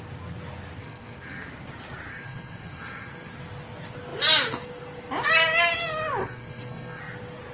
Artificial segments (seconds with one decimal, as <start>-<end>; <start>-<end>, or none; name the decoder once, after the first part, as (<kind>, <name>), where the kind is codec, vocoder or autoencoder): 0.8-1.5 (codec, SNAC); 2.1-3.3; 6.2-7.0

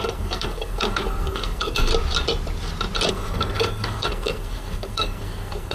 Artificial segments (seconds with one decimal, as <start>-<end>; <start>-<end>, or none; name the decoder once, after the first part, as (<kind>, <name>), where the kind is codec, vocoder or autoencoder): 0.0-1.9 (codec, SNAC); 3.1-5.7